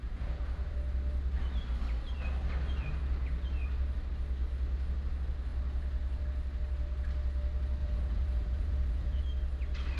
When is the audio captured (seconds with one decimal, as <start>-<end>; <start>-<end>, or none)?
0.7-7.8; 9.2-10.0